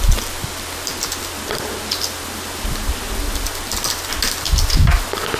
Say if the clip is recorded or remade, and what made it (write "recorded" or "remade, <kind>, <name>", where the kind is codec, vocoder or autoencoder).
recorded